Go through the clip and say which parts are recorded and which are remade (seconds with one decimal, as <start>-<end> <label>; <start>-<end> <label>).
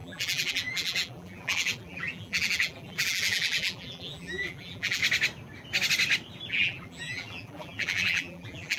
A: 0.0-5.0 remade; 5.0-6.5 recorded; 6.5-8.8 remade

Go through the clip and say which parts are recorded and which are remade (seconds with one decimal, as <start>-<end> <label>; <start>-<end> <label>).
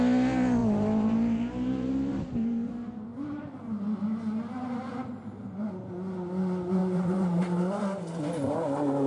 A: 0.0-0.6 recorded; 0.6-2.7 remade; 2.7-3.1 recorded; 3.1-3.6 remade; 3.6-6.8 recorded; 6.8-8.2 remade; 8.2-9.1 recorded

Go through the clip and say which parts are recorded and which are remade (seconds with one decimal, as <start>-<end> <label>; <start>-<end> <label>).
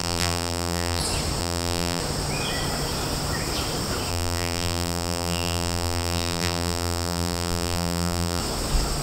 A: 0.0-1.0 remade; 1.0-1.4 recorded; 1.4-2.0 remade; 2.0-4.1 recorded; 4.1-8.4 remade; 8.4-9.0 recorded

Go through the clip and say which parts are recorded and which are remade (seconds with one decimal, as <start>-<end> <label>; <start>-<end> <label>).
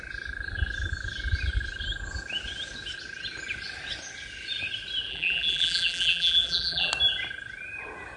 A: 0.0-5.1 recorded; 5.1-6.9 remade; 6.9-8.2 recorded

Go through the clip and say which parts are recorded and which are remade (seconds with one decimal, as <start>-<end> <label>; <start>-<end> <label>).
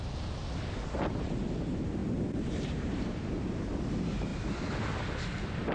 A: 0.0-2.0 recorded; 2.0-3.4 remade; 3.4-4.3 recorded; 4.3-5.0 remade; 5.0-5.7 recorded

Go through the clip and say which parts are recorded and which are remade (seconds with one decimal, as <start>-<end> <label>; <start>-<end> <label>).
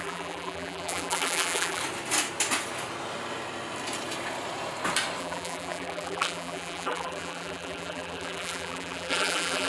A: 0.0-1.8 remade; 1.8-5.2 recorded; 5.2-9.7 remade